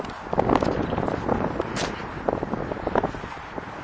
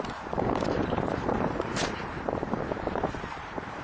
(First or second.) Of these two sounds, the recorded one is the first